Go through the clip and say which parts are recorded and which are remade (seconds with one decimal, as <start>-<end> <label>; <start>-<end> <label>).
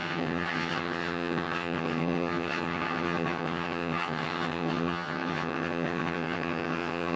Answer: 0.0-7.2 remade